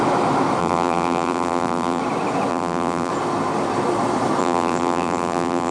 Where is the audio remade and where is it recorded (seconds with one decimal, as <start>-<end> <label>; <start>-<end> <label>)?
0.0-0.6 recorded; 0.6-2.0 remade; 2.0-2.5 recorded; 2.5-3.1 remade; 3.1-4.4 recorded; 4.4-5.7 remade